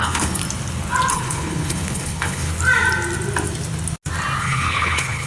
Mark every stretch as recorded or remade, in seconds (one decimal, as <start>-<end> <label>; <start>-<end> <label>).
0.0-0.4 remade; 0.4-1.1 recorded; 1.1-2.5 remade; 2.5-4.4 recorded; 4.4-5.3 remade